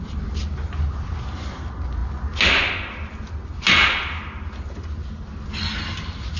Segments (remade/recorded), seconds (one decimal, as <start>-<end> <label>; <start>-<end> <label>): 0.0-6.4 recorded